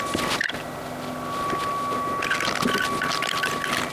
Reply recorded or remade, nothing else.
recorded